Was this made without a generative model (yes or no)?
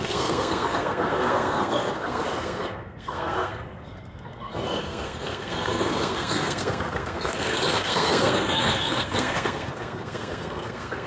no